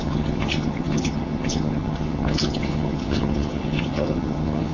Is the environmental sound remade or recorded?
remade